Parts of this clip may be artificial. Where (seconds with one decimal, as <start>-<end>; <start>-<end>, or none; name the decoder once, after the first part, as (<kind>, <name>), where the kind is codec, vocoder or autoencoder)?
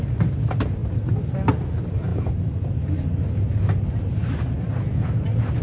none